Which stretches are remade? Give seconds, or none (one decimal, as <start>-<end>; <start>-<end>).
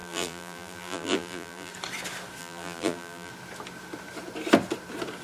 0.0-1.7; 2.4-3.3